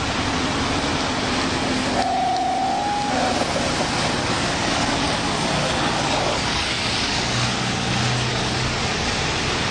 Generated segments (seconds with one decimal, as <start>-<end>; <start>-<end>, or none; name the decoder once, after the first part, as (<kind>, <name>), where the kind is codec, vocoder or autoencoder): 4.2-8.8 (codec, DAC)